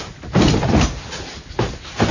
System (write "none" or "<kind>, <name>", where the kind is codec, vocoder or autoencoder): none